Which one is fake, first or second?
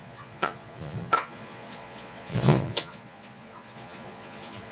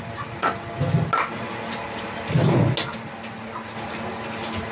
first